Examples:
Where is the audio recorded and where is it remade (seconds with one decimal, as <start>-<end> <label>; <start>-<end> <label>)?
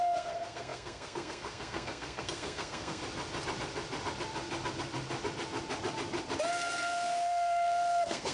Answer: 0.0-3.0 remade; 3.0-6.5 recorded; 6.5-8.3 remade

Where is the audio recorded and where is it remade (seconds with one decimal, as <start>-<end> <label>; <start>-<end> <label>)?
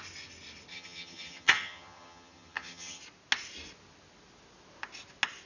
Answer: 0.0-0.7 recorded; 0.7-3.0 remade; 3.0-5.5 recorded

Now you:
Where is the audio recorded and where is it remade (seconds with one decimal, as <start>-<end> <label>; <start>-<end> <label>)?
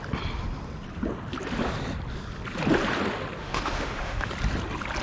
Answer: 0.0-3.4 recorded; 3.4-4.3 remade; 4.3-5.0 recorded